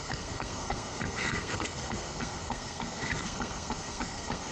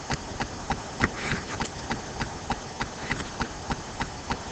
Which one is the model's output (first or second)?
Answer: first